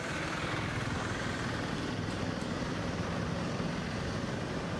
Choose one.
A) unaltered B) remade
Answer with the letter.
B